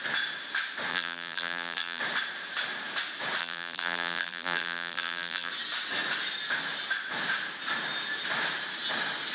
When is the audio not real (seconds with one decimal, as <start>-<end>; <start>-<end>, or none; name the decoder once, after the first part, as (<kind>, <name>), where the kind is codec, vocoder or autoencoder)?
0.9-2.0 (vocoder, BigVGAN v2); 3.4-5.5